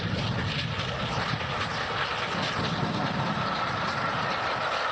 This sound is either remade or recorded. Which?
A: recorded